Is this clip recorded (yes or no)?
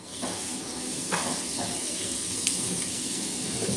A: no